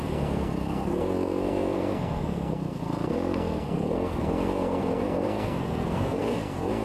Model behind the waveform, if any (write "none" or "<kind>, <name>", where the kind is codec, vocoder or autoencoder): codec, SNAC